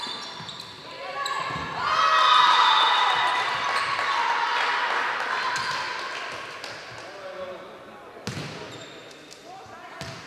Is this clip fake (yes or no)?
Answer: no